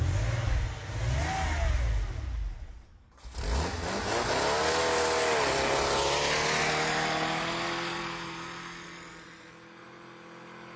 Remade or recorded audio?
recorded